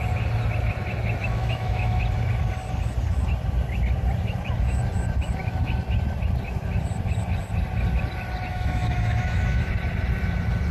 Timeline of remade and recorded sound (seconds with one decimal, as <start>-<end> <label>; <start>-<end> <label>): 0.0-1.2 recorded; 1.2-2.0 remade; 2.0-8.5 recorded; 8.5-9.7 remade; 9.7-10.7 recorded

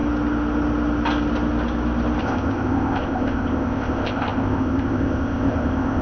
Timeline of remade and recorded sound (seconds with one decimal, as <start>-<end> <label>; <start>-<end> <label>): 0.0-2.2 recorded; 2.2-6.0 remade

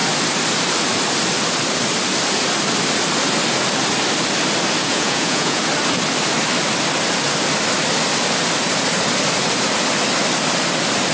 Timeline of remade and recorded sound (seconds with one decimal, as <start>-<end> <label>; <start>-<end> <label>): 0.0-4.8 recorded; 4.8-5.6 remade; 5.6-11.1 recorded

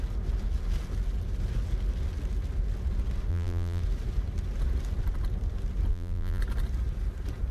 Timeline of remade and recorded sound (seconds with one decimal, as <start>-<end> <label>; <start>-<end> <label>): 0.0-3.3 recorded; 3.3-3.8 remade; 3.8-5.9 recorded; 5.9-6.4 remade; 6.4-7.5 recorded

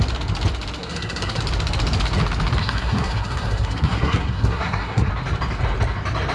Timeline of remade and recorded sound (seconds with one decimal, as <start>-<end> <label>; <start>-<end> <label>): 0.0-0.8 recorded; 0.8-1.4 remade; 1.4-2.6 recorded; 2.6-5.1 remade; 5.1-6.3 recorded

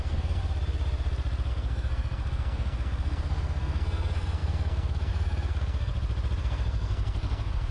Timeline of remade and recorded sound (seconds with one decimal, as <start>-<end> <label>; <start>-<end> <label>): 0.0-0.4 remade; 0.4-1.5 recorded; 1.5-5.9 remade; 5.9-6.4 recorded; 6.4-7.7 remade